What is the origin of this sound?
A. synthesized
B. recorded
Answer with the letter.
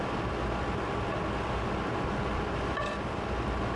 B